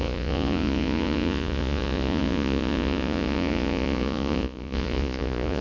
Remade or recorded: remade